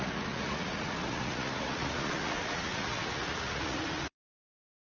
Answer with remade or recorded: remade